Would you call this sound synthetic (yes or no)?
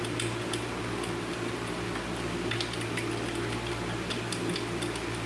no